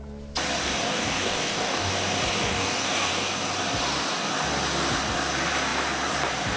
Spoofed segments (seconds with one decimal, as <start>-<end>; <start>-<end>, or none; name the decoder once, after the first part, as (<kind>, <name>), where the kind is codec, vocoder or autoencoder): 0.6-1.9 (codec, DAC); 2.4-3.1